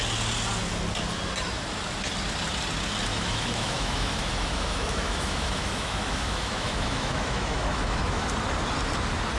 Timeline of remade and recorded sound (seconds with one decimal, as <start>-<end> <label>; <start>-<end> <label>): 0.0-3.1 recorded; 3.1-8.2 remade; 8.2-9.4 recorded